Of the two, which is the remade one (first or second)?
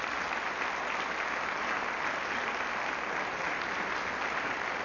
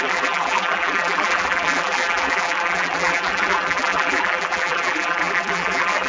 second